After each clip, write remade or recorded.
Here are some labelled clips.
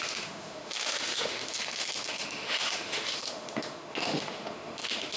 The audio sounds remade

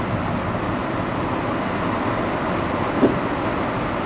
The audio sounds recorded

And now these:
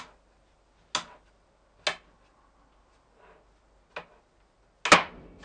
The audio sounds recorded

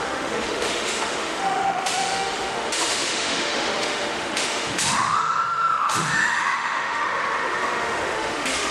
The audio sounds remade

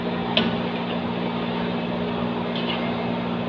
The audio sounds recorded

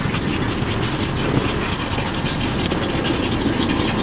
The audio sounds recorded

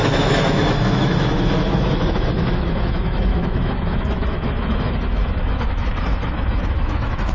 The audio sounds remade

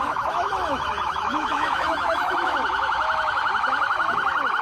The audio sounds remade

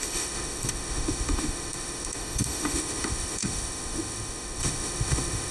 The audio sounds remade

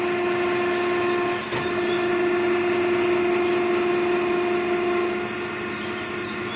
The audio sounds recorded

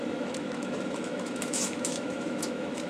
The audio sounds remade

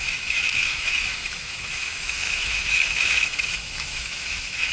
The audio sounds remade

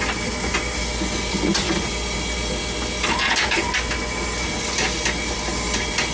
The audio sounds recorded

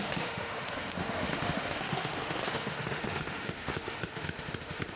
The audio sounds remade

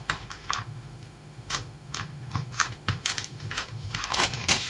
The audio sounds remade